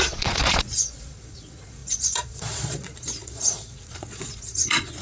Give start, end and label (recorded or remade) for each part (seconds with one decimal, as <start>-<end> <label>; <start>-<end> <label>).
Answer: 0.0-5.0 remade